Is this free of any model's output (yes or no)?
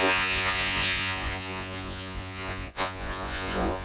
no